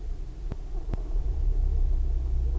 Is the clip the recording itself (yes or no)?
yes